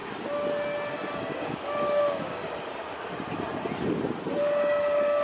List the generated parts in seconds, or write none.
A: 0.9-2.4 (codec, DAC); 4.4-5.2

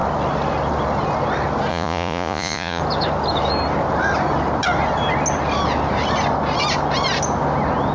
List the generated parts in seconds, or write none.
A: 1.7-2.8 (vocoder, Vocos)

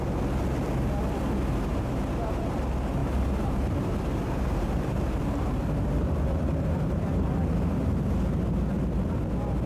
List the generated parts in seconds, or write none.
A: 1.7-2.6 (vocoder, BigVGAN v2); 3.0-7.9

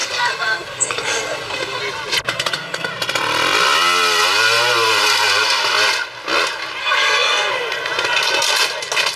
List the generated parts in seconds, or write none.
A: 0.0-1.8 (codec, SNAC); 2.3-2.9; 6.8-7.5

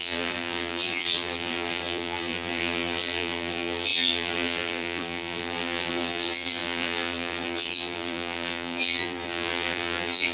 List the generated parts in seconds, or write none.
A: 0.0-10.3 (vocoder, BigVGAN v2)